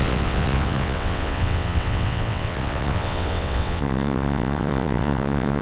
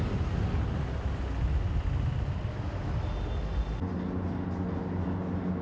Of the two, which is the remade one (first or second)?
first